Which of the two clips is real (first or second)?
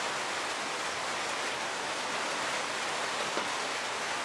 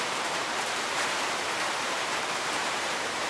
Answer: first